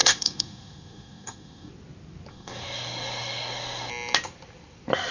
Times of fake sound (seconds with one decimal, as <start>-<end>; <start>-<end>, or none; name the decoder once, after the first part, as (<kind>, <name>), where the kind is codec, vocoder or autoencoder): 0.0-1.7 (codec, SNAC); 2.3-3.9